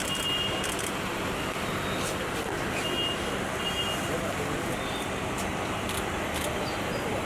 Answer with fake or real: real